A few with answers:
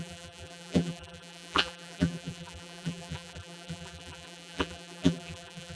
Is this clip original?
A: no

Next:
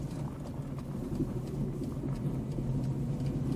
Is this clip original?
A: yes